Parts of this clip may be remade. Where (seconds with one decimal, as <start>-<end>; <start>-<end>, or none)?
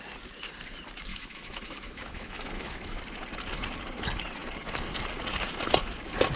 1.1-3.0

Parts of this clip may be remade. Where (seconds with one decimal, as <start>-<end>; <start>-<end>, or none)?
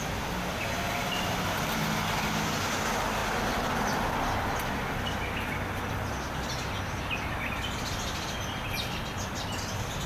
none